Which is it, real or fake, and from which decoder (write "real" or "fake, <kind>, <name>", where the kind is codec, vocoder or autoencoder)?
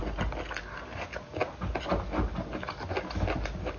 real